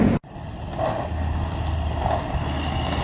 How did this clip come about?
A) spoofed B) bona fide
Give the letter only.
B